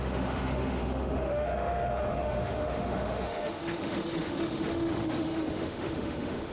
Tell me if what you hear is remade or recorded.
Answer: remade